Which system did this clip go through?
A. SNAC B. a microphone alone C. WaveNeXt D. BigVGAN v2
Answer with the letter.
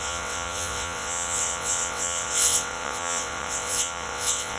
C